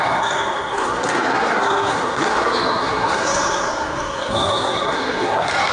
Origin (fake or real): fake